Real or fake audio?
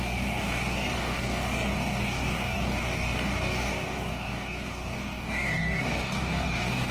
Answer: fake